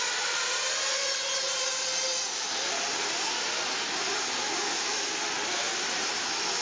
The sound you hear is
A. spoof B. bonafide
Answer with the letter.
B